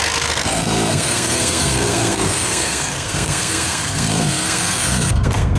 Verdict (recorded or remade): remade